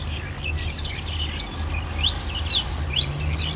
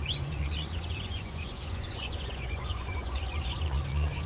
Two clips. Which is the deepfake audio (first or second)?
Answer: second